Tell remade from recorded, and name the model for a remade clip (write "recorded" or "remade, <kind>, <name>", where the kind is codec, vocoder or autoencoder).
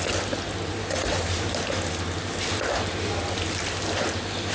recorded